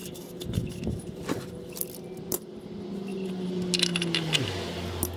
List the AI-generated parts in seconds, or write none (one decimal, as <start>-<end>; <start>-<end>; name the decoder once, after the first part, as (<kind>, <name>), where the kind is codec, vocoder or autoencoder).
none